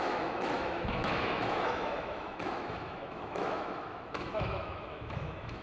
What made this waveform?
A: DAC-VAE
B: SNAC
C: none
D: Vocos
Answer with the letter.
A